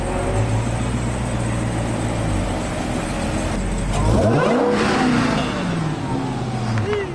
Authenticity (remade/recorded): recorded